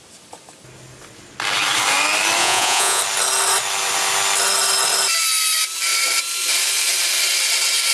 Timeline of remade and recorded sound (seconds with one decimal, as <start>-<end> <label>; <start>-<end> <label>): 0.0-2.4 recorded; 2.4-3.0 remade; 3.0-7.9 recorded